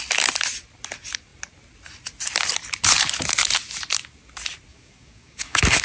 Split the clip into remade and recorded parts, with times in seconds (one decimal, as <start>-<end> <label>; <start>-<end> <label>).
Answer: 0.0-4.7 recorded; 4.7-5.8 remade